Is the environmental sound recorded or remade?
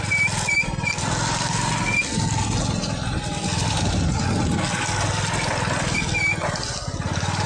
recorded